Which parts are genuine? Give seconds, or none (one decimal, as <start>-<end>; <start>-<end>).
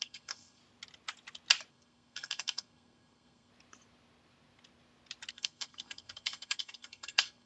0.6-1.7; 3.5-5.3